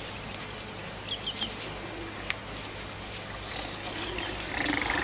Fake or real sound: real